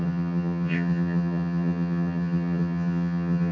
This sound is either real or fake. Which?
fake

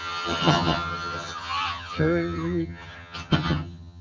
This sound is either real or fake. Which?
fake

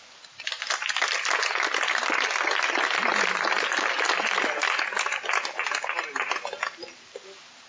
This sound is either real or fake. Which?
real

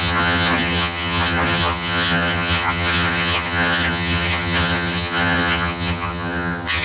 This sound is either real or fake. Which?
fake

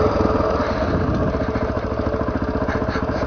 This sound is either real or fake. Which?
real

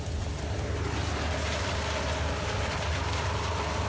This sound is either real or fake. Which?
real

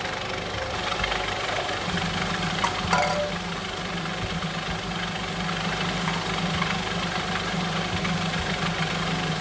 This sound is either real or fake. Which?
real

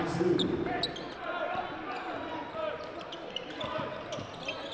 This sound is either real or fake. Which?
real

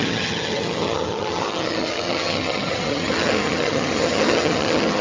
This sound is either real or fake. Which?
fake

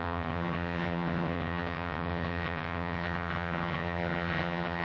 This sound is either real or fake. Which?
fake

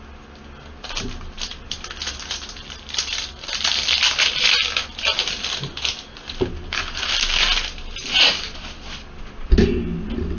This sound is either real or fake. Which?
real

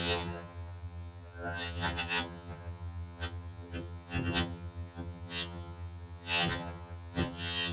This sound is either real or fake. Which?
fake